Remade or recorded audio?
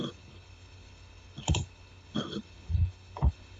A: remade